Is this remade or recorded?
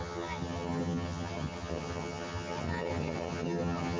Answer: remade